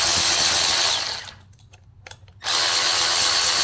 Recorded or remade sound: recorded